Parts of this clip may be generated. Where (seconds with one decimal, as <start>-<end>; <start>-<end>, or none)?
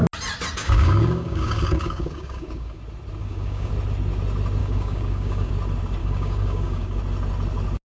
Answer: 0.6-2.8; 3.2-3.7; 4.6-5.5; 6.0-7.0